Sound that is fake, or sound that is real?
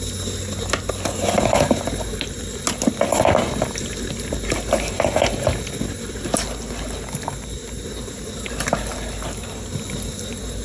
real